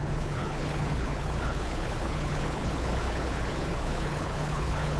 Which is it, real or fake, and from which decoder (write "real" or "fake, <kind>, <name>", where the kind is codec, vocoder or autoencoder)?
fake, codec, HILCodec